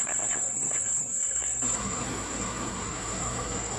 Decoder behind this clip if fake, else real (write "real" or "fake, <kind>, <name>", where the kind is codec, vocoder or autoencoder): fake, codec, SNAC